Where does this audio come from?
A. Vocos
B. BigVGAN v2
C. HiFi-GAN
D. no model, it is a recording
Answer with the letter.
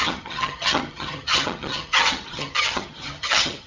C